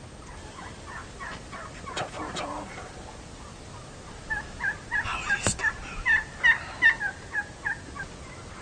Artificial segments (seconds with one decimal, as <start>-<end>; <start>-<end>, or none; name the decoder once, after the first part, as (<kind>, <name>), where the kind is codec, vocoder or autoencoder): none